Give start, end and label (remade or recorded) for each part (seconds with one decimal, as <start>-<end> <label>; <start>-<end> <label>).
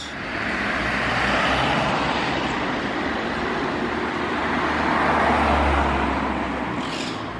0.0-4.4 remade; 4.4-6.9 recorded; 6.9-7.4 remade